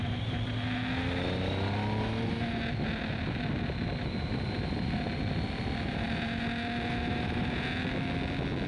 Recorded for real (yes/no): yes